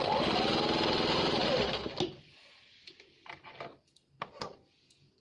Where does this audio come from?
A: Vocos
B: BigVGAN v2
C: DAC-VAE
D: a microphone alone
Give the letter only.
D